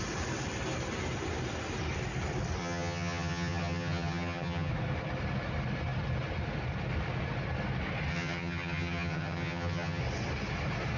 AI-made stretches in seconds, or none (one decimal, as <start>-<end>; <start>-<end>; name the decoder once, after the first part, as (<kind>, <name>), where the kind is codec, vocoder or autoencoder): 2.6-4.7 (vocoder, HiFi-GAN); 8.1-10.0